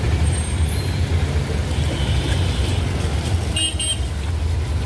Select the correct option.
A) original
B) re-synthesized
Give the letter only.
A